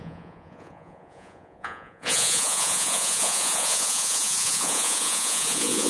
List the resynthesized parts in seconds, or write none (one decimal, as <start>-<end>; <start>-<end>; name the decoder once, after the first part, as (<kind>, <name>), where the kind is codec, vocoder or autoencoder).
0.0-5.9 (vocoder, Vocos)